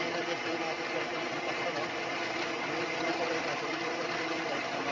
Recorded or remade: recorded